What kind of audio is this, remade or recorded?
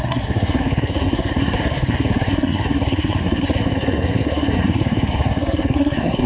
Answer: remade